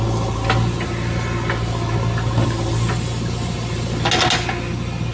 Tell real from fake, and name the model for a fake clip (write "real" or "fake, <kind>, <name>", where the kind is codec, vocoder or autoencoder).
real